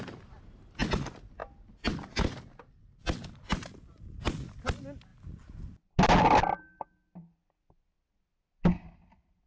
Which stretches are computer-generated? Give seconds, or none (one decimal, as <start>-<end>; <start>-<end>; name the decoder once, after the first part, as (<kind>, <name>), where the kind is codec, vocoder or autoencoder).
none